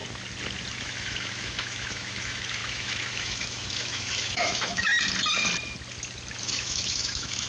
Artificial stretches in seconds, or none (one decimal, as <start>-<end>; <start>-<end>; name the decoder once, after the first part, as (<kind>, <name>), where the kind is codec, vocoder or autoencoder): 0.7-4.9 (autoencoder, DAC-VAE); 6.4-7.5